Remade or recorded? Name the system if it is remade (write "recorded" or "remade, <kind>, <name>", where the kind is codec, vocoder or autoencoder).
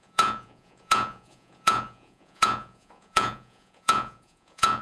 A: remade, vocoder, Vocos